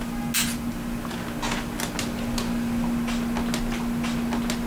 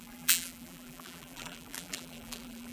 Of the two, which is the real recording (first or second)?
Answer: first